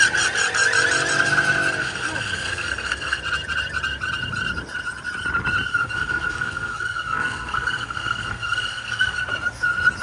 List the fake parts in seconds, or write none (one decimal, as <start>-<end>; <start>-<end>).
1.8-3.2; 5.7-9.2